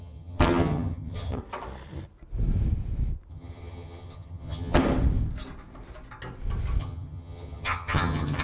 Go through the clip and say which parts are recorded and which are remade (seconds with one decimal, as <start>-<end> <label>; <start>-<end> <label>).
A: 0.0-1.4 remade; 1.4-3.3 recorded; 3.3-4.8 remade; 4.8-6.8 recorded; 6.8-8.4 remade